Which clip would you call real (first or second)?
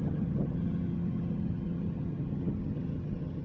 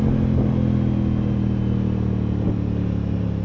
second